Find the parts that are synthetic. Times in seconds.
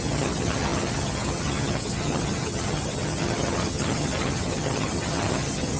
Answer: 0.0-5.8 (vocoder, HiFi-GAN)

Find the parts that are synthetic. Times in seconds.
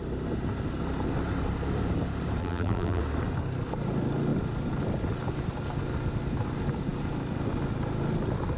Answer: 2.4-3.0 (vocoder, BigVGAN v2)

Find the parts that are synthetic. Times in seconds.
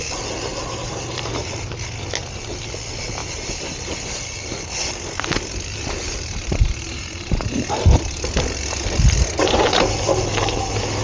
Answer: 0.5-1.5 (vocoder, BigVGAN v2); 3.2-8.0